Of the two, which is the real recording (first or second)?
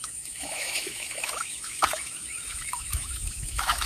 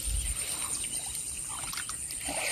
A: second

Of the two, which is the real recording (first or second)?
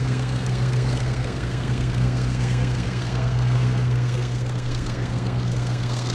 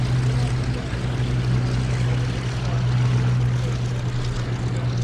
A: second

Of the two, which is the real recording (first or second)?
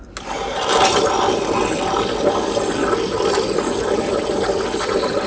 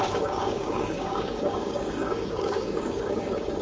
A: first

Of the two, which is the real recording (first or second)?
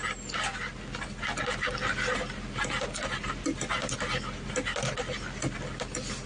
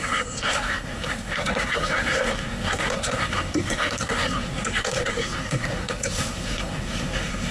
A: first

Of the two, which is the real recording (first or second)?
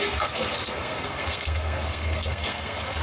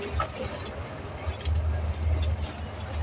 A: second